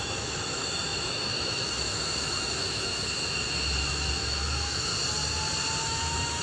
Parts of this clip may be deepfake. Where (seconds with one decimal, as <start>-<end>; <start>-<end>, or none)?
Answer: 0.0-4.9; 5.8-6.4